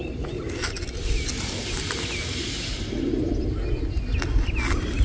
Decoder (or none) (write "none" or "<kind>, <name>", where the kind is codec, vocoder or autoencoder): none